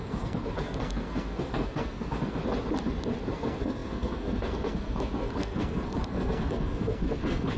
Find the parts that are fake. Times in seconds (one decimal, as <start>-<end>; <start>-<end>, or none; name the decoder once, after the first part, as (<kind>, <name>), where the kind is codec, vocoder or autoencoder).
0.0-2.4 (codec, SNAC); 3.3-7.6